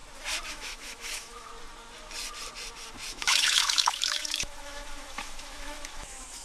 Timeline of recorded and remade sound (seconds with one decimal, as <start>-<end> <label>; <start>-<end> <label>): 0.0-0.5 recorded; 0.5-1.5 remade; 1.5-3.1 recorded; 3.1-6.4 remade